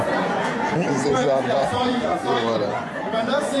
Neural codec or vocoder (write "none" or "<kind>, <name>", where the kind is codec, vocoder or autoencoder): vocoder, Vocos